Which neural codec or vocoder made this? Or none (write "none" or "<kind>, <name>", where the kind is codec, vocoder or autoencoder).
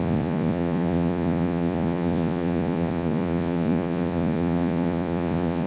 vocoder, Vocos